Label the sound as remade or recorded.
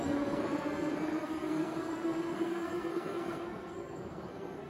remade